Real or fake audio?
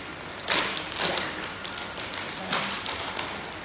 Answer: real